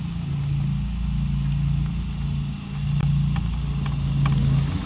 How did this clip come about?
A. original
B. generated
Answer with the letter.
A